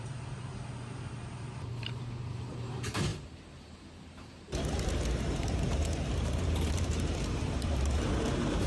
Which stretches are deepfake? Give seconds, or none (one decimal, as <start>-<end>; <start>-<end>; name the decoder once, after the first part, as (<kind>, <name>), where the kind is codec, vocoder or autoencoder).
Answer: 0.0-0.5 (vocoder, BigVGAN v2); 1.1-8.7